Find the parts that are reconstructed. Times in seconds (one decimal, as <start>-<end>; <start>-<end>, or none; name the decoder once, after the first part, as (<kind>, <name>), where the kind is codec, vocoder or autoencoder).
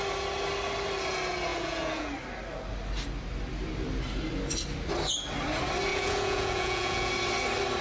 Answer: 1.5-2.1 (vocoder, Vocos); 5.9-7.1